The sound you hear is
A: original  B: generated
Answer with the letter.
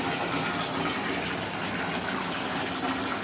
A